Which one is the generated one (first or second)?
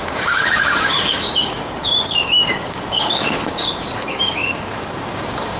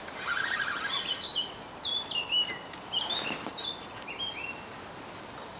first